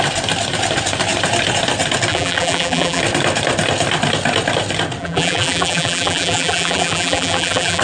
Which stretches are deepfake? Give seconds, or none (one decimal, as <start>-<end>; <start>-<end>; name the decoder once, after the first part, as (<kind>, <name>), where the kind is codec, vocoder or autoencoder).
2.1-3.0 (vocoder, BigVGAN v2); 5.0-7.8